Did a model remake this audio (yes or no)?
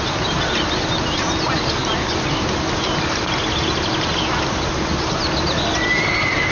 no